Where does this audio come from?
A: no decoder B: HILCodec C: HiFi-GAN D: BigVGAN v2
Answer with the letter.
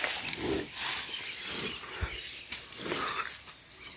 A